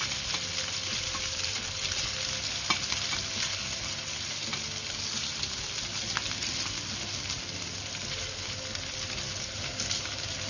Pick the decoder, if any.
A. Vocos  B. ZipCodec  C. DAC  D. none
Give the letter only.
D